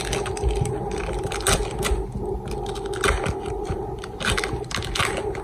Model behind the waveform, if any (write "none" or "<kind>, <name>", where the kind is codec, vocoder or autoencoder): none